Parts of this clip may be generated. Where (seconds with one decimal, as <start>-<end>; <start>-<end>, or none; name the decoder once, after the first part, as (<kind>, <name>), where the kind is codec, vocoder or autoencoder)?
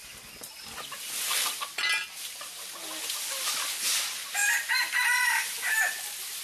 none